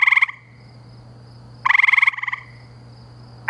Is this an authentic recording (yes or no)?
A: yes